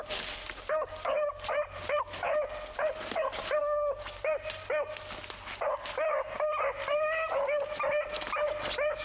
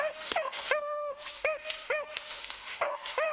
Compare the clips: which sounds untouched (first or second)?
first